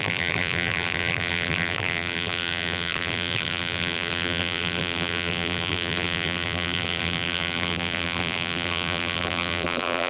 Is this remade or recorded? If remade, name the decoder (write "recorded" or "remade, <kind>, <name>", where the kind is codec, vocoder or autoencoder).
remade, vocoder, BigVGAN v2